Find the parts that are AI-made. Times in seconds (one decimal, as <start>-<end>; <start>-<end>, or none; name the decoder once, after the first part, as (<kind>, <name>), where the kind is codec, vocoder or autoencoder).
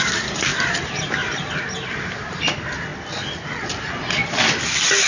0.5-2.4 (vocoder, BigVGAN v2)